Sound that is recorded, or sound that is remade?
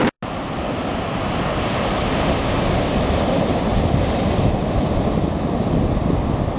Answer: recorded